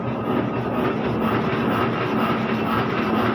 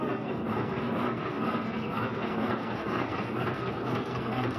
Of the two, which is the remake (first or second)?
second